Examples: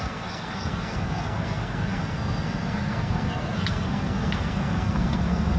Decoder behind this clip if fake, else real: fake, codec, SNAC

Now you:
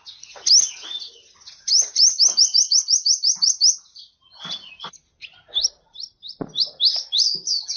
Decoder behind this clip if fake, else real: real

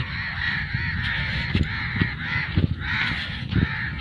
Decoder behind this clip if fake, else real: real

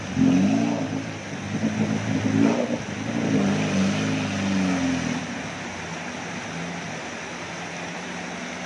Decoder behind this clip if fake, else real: real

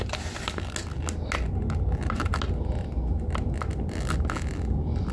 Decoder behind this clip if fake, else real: real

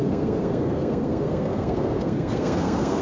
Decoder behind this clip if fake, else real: fake, codec, SNAC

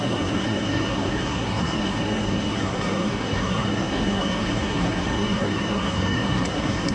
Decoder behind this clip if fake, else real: fake, codec, SNAC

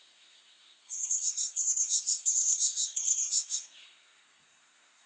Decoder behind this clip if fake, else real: fake, codec, SNAC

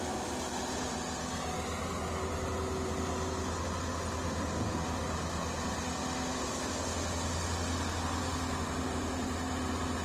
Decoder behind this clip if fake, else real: real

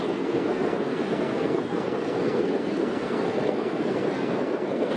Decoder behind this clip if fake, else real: fake, codec, SNAC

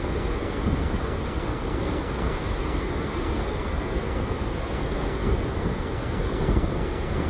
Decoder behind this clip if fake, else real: fake, codec, SNAC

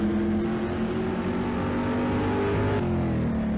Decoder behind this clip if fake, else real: real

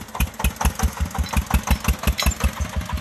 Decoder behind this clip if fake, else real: real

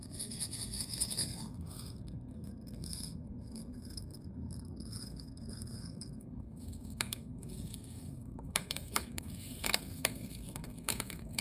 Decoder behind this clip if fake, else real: fake, codec, SNAC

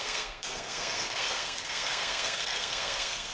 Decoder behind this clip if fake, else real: fake, codec, SNAC